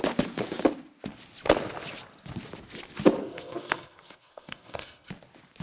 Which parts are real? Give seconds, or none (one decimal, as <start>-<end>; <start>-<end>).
0.0-3.2; 5.1-5.6